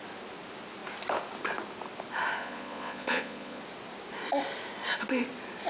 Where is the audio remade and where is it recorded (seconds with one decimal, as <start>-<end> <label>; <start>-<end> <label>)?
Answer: 0.0-2.4 recorded; 2.4-3.6 remade; 3.6-5.7 recorded